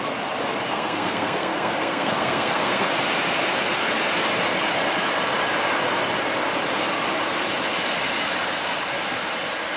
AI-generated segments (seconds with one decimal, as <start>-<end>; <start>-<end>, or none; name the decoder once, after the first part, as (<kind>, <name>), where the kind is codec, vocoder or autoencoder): 0.7-2.9 (codec, SNAC)